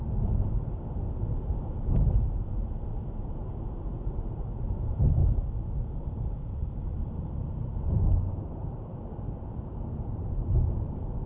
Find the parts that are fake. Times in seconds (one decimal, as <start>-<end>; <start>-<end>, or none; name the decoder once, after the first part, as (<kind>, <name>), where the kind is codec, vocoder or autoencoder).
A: 0.0-1.2 (vocoder, BigVGAN v2); 1.8-5.2; 6.0-8.9; 10.1-11.3